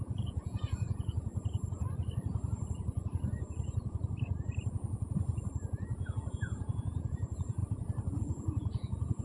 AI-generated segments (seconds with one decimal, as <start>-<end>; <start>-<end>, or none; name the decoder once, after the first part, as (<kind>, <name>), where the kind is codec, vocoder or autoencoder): 0.0-1.3 (vocoder, Vocos); 6.3-7.6; 8.2-9.2